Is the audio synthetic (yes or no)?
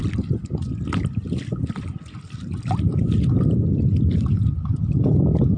yes